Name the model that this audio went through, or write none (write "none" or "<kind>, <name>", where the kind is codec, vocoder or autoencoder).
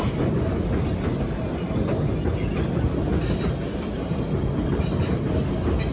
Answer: none